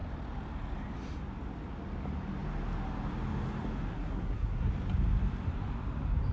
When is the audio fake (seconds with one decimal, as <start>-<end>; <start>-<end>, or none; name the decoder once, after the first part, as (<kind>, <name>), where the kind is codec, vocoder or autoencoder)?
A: 3.9-4.7 (codec, SNAC)